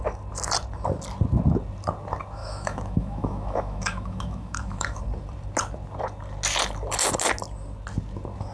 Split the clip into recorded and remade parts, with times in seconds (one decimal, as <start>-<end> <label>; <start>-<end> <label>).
0.0-2.4 recorded; 2.4-5.0 remade; 5.0-8.5 recorded

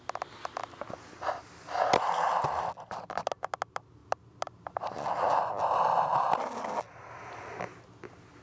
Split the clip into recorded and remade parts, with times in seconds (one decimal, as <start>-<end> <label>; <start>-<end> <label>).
0.0-8.4 recorded

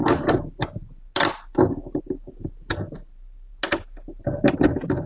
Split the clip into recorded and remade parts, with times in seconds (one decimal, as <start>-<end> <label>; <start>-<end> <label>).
0.0-5.1 recorded

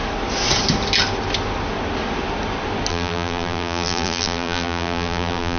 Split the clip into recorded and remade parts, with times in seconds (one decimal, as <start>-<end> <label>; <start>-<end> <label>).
0.0-2.9 recorded; 2.9-5.6 remade

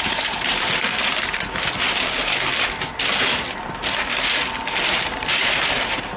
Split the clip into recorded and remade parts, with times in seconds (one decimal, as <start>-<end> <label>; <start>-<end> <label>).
0.0-1.1 remade; 1.1-4.8 recorded; 4.8-6.2 remade

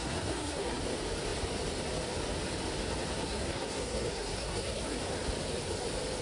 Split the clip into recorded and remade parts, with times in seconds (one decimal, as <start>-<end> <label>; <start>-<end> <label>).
0.0-0.8 remade; 0.8-3.2 recorded; 3.2-5.0 remade; 5.0-6.2 recorded